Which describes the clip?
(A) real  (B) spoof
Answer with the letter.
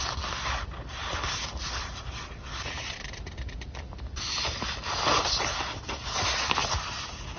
A